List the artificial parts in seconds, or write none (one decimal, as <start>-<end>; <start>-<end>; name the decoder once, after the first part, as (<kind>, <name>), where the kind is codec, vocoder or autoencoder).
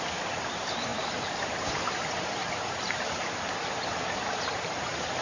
0.0-5.2 (vocoder, BigVGAN v2)